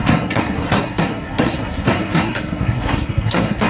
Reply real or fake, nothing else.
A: fake